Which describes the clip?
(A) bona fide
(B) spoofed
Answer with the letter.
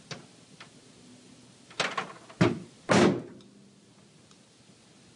A